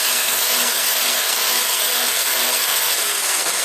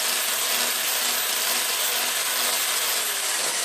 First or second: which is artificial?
first